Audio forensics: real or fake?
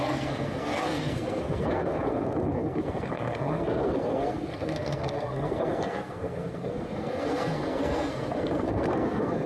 fake